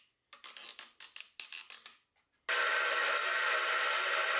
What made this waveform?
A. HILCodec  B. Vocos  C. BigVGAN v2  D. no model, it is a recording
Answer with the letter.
D